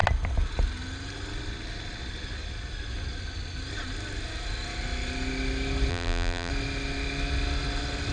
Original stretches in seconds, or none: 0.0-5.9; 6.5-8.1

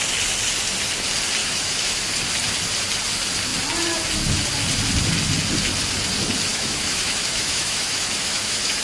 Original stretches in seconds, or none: 0.0-1.4; 2.1-6.5

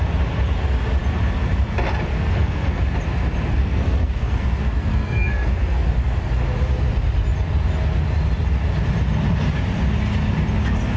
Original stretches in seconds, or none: 0.0-2.1; 2.8-3.6; 5.9-11.0

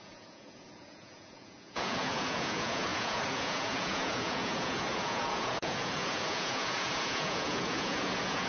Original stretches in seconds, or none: none

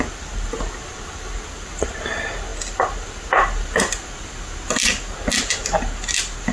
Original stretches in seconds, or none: 0.0-6.5

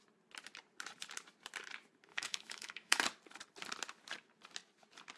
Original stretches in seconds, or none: 0.0-2.1; 3.0-5.2